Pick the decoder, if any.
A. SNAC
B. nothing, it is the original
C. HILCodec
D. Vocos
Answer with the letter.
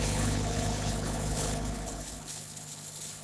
C